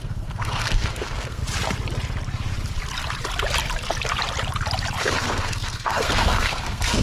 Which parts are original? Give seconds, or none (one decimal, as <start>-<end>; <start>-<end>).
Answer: 1.4-5.0